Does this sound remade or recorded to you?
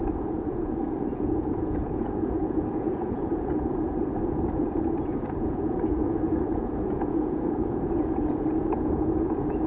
remade